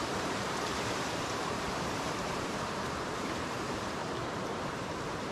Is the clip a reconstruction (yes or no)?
yes